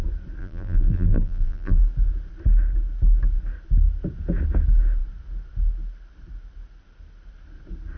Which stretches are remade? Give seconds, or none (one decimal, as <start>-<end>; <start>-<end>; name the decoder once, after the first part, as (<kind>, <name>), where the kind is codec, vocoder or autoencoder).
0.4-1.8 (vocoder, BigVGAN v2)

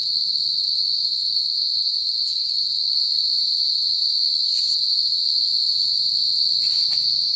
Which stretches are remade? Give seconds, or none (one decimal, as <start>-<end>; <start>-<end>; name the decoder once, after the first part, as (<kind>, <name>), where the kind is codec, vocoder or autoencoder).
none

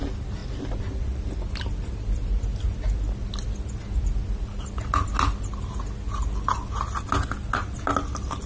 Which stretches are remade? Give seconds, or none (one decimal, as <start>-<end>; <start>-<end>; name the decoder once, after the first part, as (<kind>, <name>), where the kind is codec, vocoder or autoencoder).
none